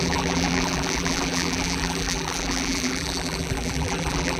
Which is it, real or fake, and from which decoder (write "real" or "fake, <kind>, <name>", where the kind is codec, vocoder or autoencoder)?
fake, vocoder, BigVGAN v2